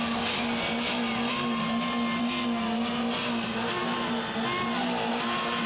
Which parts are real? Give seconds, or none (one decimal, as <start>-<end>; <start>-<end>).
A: 0.0-5.7